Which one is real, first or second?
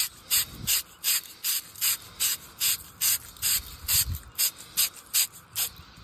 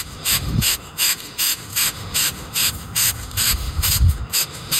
first